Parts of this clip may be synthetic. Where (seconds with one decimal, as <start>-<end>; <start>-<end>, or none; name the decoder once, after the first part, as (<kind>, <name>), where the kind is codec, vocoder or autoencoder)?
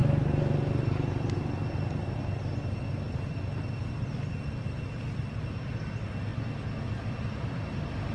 none